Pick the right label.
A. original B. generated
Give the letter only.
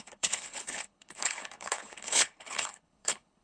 B